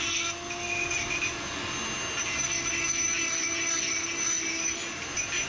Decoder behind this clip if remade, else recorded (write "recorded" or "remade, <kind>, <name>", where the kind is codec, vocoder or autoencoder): recorded